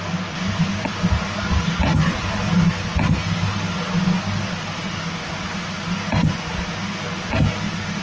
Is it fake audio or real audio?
real